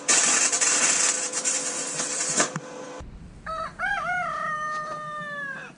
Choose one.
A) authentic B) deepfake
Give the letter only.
B